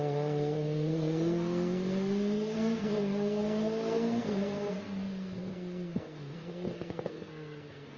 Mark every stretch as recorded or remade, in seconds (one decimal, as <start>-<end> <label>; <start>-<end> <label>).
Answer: 0.0-8.0 remade